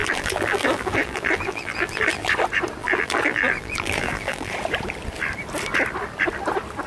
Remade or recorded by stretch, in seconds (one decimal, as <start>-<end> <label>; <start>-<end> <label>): 0.0-2.3 remade; 2.3-2.8 recorded; 2.8-4.5 remade; 4.5-6.9 recorded